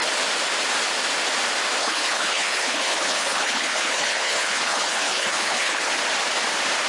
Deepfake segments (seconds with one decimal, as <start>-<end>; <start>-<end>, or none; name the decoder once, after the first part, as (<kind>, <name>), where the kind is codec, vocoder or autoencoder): 1.8-5.9 (codec, HILCodec)